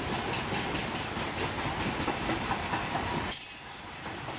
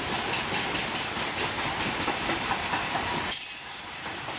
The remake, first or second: second